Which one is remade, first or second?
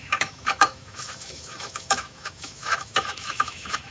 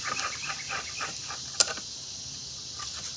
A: first